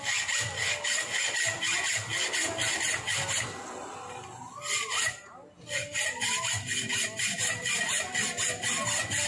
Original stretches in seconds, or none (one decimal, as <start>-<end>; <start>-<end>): 0.0-9.3